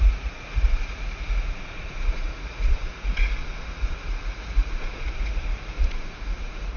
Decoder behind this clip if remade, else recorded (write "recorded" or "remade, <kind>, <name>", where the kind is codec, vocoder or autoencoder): remade, vocoder, Vocos